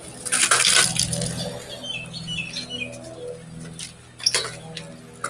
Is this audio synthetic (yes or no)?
no